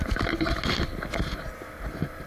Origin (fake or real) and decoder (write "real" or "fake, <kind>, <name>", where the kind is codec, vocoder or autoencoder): real